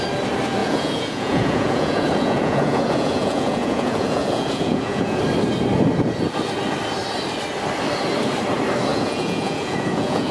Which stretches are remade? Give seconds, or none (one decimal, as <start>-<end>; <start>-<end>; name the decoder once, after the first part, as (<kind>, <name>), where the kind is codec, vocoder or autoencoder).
0.6-5.2 (vocoder, Vocos); 8.9-10.3